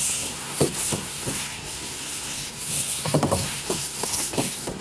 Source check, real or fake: fake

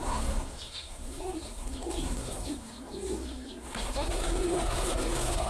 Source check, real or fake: fake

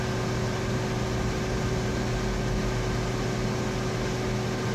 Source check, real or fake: real